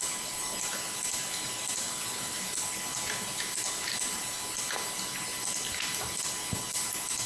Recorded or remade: recorded